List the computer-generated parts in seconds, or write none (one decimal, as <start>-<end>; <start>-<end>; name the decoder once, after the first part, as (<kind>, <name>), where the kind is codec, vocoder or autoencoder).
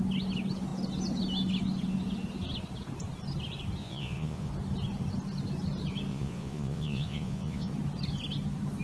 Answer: 3.8-4.5 (vocoder, Vocos); 6.1-7.7